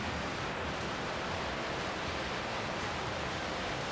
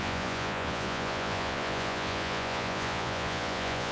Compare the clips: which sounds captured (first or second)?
first